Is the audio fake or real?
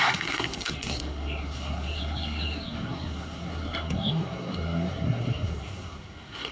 fake